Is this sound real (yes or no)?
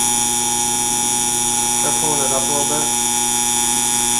yes